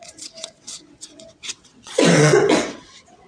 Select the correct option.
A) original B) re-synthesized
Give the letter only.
B